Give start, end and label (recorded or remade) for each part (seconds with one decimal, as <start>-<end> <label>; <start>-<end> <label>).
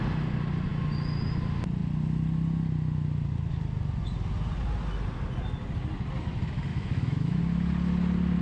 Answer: 0.0-6.7 recorded; 6.7-7.4 remade; 7.4-8.4 recorded